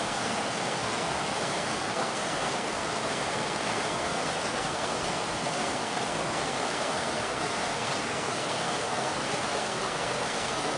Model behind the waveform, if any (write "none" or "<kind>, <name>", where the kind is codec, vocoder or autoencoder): codec, SNAC